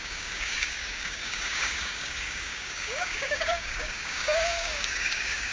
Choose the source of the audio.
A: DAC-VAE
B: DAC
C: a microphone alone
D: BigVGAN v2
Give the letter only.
B